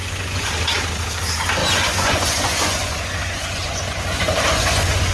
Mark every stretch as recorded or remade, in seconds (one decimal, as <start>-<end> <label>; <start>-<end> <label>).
0.0-0.5 remade; 0.5-1.6 recorded; 1.6-5.1 remade